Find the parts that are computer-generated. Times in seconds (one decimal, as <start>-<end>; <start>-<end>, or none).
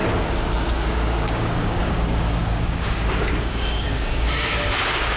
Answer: 0.7-5.2